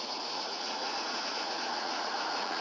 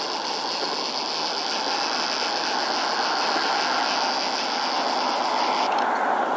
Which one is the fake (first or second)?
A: first